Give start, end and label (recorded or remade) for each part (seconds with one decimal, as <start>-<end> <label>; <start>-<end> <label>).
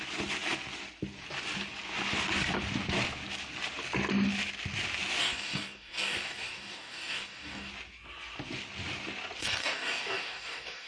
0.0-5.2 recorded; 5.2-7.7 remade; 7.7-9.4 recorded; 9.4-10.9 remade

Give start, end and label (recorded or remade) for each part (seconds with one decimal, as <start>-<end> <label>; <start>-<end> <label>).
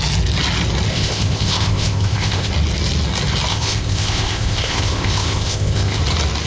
0.0-0.9 recorded; 0.9-2.5 remade; 2.5-3.5 recorded; 3.5-6.0 remade; 6.0-6.5 recorded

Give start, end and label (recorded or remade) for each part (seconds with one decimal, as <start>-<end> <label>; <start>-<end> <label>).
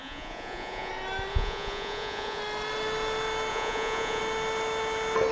0.0-0.9 remade; 0.9-1.3 recorded; 1.3-2.4 remade; 2.4-3.5 recorded; 3.5-4.2 remade; 4.2-5.3 recorded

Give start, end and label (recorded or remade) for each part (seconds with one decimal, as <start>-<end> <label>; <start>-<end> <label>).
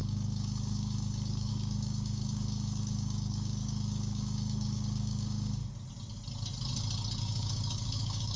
0.0-5.6 remade; 5.6-7.2 recorded; 7.2-8.4 remade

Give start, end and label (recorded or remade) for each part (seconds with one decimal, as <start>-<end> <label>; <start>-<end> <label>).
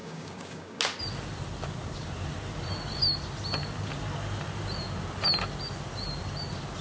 0.0-0.8 remade; 0.8-6.8 recorded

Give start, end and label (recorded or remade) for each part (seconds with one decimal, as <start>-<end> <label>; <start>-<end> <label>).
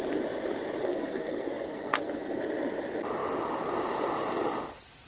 0.0-0.8 recorded; 0.8-2.4 remade; 2.4-5.1 recorded